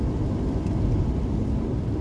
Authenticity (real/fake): real